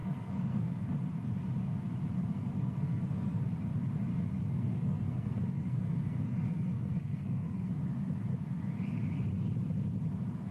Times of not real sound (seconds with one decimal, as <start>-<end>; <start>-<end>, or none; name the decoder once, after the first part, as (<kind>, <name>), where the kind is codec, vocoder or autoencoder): 0.0-0.9 (codec, SNAC); 2.2-3.4; 4.1-7.7